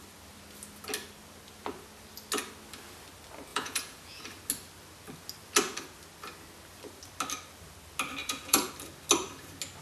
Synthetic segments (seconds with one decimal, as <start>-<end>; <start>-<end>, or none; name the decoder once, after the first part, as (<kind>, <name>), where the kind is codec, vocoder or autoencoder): 3.5-4.2 (vocoder, Vocos); 8.2-8.7